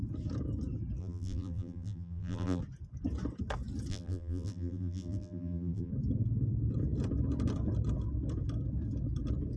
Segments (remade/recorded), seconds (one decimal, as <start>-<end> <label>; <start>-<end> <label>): 0.0-1.0 recorded; 1.0-2.6 remade; 2.6-3.9 recorded; 3.9-5.9 remade; 5.9-9.6 recorded